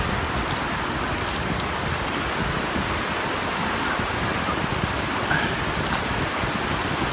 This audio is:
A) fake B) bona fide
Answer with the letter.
B